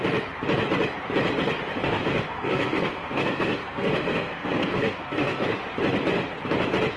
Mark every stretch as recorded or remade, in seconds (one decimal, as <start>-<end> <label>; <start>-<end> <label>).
0.0-1.8 recorded; 1.8-5.6 remade; 5.6-7.0 recorded